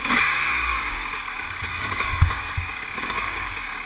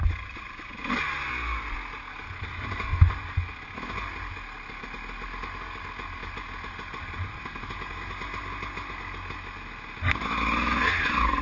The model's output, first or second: first